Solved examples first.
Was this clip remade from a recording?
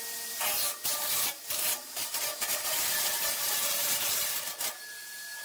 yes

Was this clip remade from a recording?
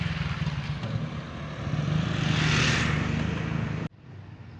no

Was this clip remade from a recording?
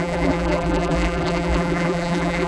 yes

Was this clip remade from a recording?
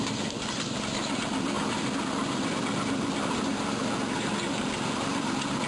no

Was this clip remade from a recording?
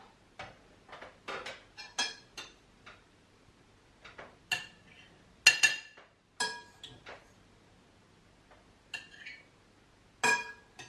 no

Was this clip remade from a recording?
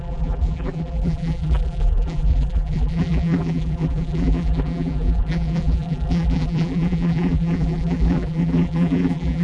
yes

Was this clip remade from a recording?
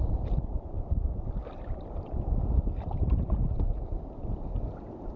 no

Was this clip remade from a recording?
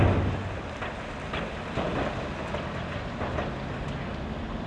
no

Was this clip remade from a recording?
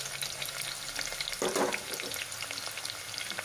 no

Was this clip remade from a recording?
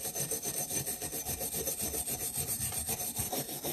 no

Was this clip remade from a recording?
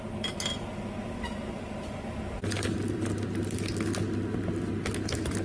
no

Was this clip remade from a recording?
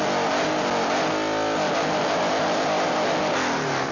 no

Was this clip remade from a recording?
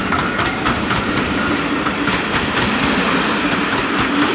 no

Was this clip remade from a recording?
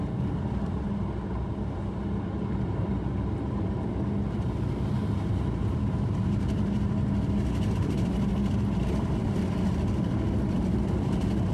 no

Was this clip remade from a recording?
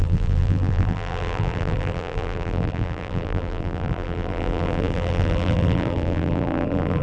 yes